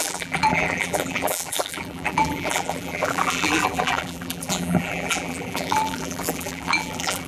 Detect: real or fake fake